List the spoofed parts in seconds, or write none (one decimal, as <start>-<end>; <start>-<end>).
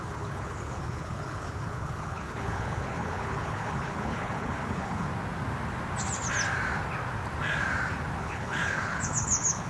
0.0-5.1; 8.2-9.7